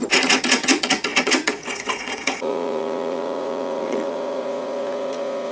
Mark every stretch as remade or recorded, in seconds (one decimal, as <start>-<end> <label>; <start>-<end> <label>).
0.0-5.5 remade